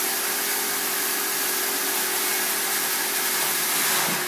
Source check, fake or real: real